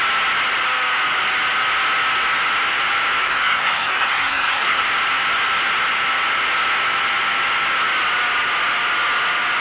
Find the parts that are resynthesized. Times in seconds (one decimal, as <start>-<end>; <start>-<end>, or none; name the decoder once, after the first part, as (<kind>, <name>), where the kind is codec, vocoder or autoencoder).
3.2-4.8 (codec, SNAC)